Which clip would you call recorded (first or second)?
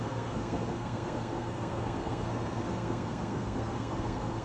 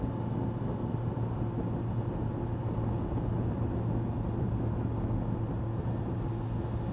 second